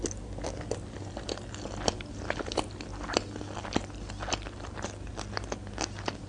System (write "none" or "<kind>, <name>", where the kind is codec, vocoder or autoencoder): none